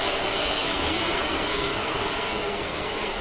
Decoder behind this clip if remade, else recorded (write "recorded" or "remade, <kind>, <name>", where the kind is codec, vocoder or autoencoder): remade, codec, SNAC